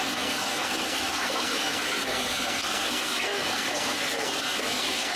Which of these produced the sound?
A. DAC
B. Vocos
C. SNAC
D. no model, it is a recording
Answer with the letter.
C